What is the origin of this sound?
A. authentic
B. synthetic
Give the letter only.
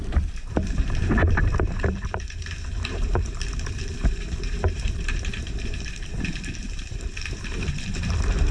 B